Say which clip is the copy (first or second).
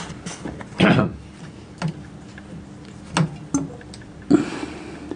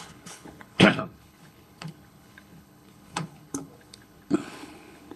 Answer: second